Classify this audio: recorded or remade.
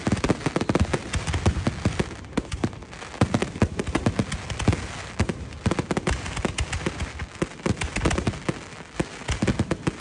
recorded